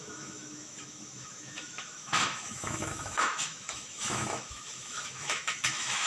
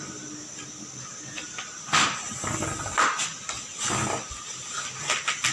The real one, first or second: second